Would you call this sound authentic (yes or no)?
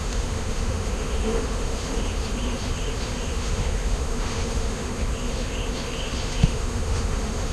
no